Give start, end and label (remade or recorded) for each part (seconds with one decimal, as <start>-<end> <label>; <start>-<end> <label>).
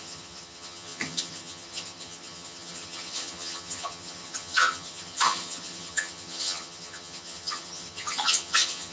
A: 0.0-8.9 remade